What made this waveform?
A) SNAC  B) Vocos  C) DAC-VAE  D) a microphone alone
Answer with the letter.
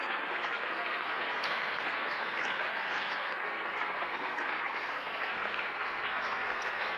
A